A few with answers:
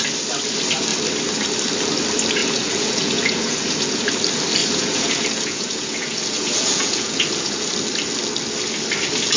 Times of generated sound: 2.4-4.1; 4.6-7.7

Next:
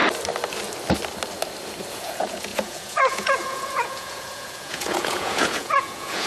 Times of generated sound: 1.9-6.3